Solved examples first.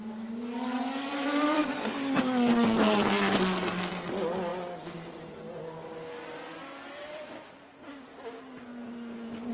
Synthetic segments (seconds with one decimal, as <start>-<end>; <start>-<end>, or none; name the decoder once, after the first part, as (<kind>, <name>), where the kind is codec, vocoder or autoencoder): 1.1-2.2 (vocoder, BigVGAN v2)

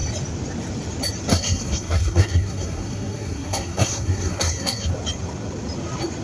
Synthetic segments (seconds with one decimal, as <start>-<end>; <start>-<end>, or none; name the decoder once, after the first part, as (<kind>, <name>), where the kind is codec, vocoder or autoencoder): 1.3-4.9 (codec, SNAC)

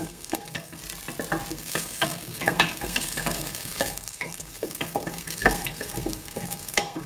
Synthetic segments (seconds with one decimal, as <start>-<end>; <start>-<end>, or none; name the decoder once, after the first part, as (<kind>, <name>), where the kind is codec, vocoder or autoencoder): 0.0-0.8 (codec, SNAC); 1.5-7.1

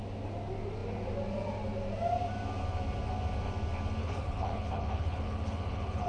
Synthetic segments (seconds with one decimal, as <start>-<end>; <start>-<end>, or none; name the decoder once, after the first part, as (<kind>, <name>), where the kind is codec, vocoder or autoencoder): 4.0-6.1 (codec, HILCodec)

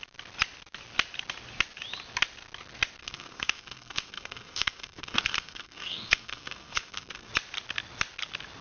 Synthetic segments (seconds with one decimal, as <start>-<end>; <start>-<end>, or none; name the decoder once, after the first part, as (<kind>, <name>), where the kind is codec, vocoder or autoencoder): 3.0-7.3 (codec, SNAC)

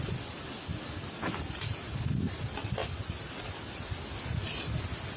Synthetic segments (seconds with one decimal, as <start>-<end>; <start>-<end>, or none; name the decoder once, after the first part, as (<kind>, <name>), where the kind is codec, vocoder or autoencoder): none